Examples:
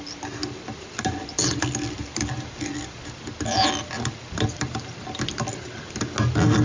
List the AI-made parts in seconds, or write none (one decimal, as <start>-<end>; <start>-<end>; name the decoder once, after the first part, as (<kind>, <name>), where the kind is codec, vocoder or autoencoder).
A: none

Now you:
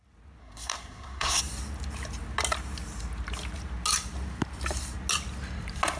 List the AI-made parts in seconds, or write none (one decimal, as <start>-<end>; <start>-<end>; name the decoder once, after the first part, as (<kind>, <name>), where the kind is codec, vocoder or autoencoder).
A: 0.4-1.4 (codec, SNAC)

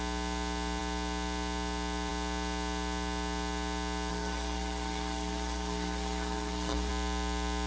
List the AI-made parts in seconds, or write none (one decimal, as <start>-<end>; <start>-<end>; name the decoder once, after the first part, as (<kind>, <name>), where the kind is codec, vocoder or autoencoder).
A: 4.1-6.9 (codec, SNAC)

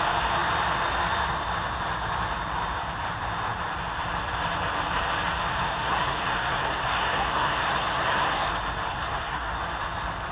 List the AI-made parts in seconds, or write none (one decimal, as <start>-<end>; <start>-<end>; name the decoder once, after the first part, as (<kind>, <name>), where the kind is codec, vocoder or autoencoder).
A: 5.5-8.5 (codec, SNAC); 8.9-9.5

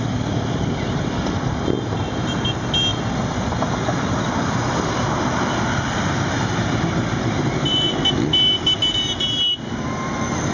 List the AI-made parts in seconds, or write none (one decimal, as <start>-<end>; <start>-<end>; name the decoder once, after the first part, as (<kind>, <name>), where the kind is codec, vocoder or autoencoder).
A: none

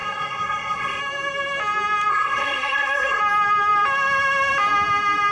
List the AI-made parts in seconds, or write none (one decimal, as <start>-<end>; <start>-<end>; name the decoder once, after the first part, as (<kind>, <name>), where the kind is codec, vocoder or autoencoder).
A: 0.0-1.0 (codec, SNAC); 2.1-3.2